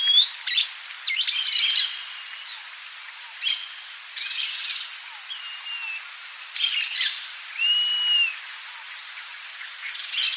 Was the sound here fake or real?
real